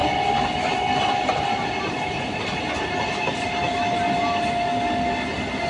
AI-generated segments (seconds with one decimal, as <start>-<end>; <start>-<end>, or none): none